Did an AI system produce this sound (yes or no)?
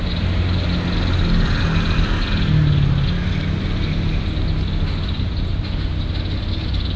no